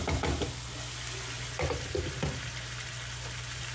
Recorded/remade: recorded